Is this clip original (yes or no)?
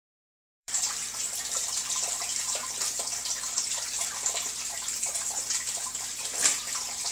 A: no